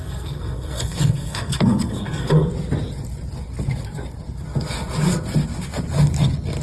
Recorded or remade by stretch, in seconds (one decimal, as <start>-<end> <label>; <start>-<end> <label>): 0.0-2.5 remade; 2.5-6.6 recorded